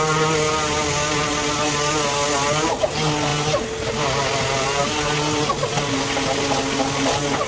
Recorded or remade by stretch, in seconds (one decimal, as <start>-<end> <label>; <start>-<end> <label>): 0.0-7.5 recorded